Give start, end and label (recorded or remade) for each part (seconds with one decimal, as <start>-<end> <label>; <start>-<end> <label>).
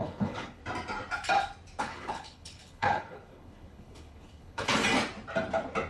0.0-0.6 remade; 0.6-1.8 recorded; 1.8-4.7 remade; 4.7-5.9 recorded